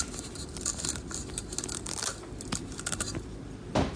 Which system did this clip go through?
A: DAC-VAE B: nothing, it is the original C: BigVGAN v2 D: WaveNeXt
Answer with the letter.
B